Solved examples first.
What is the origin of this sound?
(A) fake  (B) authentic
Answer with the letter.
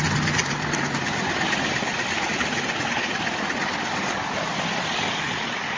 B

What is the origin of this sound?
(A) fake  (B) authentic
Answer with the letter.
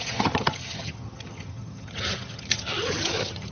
A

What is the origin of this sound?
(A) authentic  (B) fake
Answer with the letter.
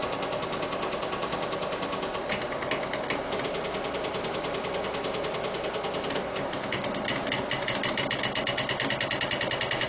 A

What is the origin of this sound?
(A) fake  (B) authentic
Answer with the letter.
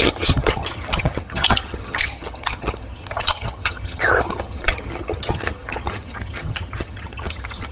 A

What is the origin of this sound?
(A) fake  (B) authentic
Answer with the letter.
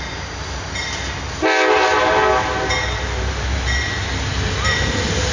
B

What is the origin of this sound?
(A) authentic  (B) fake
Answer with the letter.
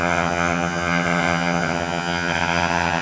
B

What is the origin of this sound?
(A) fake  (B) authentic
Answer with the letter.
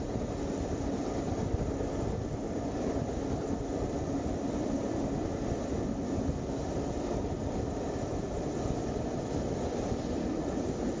B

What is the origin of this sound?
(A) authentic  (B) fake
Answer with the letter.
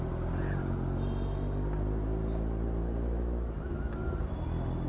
A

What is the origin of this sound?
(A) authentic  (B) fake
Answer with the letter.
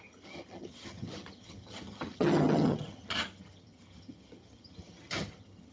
B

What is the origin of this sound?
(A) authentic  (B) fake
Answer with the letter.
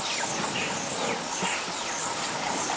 A